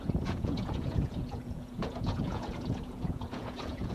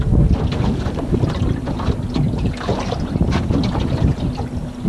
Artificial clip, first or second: first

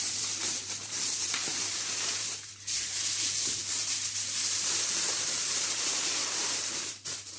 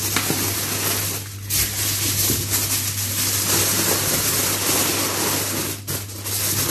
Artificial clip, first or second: first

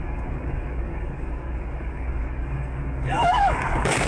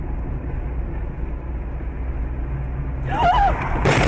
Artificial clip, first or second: first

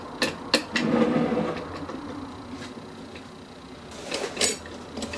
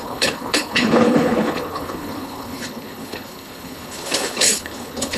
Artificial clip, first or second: second